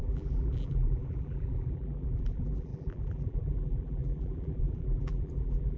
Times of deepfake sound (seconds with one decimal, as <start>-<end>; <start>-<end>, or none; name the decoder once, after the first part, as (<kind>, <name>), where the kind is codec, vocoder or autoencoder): 0.0-5.8 (vocoder, BigVGAN v2)